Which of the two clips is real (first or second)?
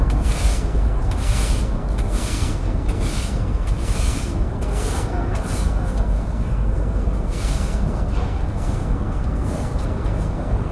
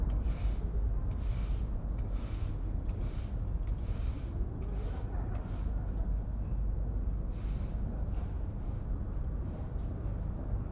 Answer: second